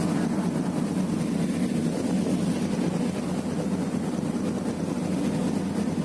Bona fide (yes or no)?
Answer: yes